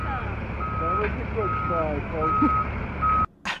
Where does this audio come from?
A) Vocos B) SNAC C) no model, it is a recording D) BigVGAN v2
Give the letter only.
C